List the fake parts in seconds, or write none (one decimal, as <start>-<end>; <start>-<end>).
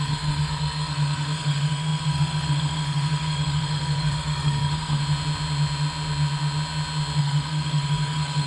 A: 0.0-5.0; 7.2-8.5